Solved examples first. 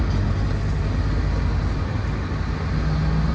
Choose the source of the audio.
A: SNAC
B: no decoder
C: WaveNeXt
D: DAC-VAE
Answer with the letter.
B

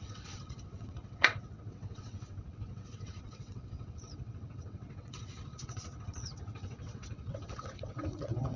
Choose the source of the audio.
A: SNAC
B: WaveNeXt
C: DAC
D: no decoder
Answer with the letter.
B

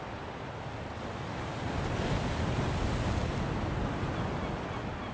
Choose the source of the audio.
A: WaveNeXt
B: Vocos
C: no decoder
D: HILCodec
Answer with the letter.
C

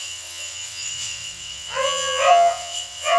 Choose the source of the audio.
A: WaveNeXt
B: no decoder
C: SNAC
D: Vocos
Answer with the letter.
A